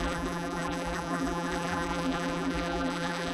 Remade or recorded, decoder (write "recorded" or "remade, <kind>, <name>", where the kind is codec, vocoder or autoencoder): remade, vocoder, BigVGAN v2